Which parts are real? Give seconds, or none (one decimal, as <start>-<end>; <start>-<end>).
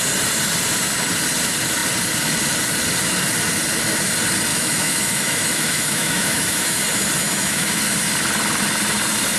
0.0-4.5; 6.8-7.2; 7.8-9.4